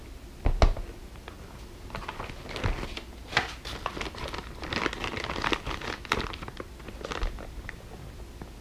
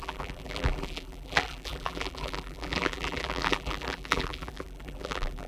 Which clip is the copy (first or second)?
second